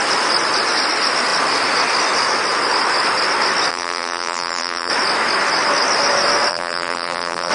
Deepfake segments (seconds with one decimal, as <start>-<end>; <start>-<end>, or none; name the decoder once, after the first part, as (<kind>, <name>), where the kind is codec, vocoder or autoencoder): 3.7-4.9 (vocoder, BigVGAN v2); 6.5-7.5